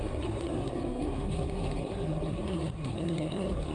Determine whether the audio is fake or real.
fake